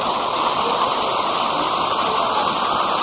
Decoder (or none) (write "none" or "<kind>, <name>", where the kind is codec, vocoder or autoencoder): none